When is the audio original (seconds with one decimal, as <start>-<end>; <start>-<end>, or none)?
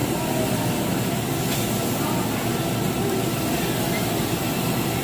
0.0-5.0